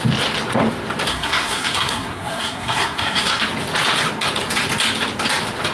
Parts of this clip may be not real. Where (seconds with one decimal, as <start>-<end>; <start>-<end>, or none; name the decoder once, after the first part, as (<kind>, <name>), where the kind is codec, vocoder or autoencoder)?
1.1-3.4 (codec, SNAC)